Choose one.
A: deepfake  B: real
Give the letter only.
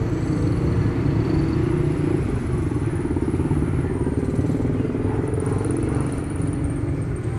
A